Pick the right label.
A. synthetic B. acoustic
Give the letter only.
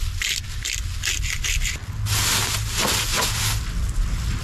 B